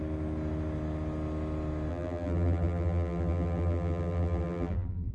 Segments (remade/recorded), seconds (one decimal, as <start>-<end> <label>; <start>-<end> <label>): 0.0-1.9 recorded; 1.9-5.1 remade